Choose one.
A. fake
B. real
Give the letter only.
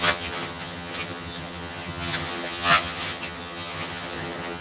A